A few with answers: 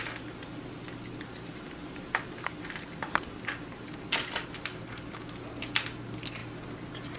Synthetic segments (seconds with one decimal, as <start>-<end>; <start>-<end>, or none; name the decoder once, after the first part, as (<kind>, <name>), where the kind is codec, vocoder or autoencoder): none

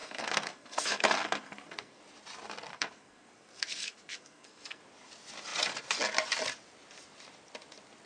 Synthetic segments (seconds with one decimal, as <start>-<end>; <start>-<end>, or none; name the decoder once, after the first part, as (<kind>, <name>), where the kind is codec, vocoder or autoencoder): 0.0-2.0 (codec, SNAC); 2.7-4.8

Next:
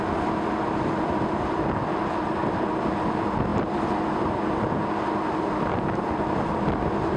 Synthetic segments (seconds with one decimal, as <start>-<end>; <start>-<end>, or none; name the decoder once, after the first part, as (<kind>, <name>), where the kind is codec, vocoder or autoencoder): none

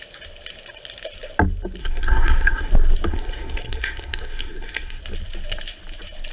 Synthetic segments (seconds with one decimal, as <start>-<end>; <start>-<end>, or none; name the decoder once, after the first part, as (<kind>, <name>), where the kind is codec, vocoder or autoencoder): 1.8-2.7 (codec, SNAC); 3.1-5.0